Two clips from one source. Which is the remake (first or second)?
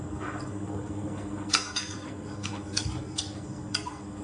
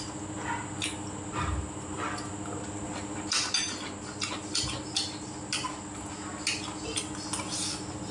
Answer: first